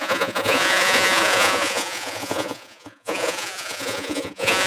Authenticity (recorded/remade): remade